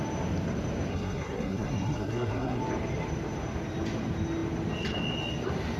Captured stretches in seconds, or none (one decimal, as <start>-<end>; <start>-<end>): 0.0-0.9; 2.6-5.8